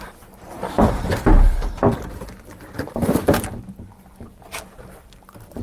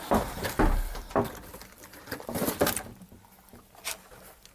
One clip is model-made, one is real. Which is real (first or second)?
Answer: second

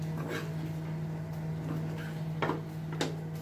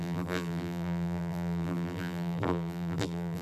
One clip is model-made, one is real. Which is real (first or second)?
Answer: first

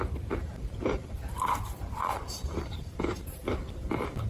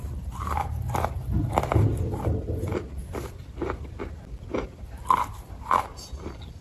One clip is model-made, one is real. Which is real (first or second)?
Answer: second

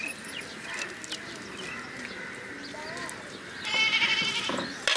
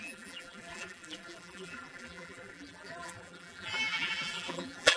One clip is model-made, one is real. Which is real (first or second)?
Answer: first